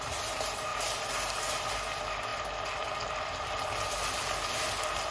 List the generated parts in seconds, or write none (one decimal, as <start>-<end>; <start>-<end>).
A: none